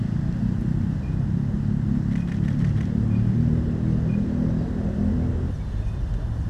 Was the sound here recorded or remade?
recorded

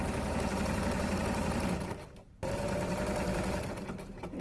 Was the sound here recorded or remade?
remade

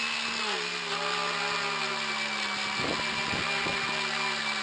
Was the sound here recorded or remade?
recorded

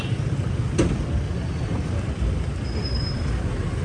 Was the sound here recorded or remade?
recorded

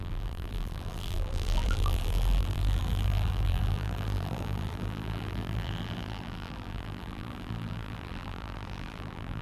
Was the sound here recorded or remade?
remade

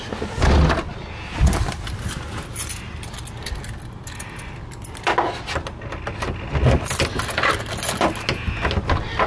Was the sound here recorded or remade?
recorded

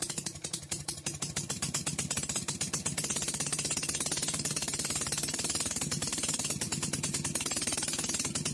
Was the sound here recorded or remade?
remade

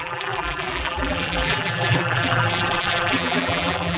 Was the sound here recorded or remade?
remade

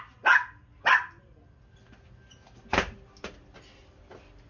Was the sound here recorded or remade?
recorded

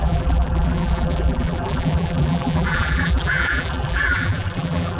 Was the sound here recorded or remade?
remade